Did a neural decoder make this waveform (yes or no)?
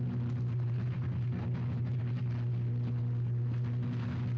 no